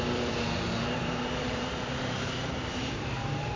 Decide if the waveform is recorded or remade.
remade